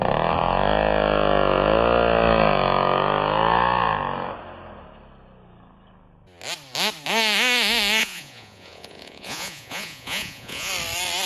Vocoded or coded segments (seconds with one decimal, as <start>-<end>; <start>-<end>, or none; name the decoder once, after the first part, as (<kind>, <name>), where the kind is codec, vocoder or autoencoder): 8.0-10.7 (vocoder, Vocos)